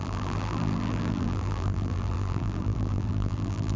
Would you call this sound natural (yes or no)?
no